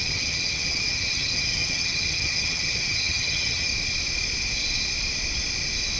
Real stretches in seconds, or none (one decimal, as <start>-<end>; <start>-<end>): 3.7-6.0